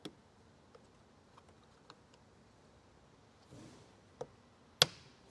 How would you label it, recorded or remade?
recorded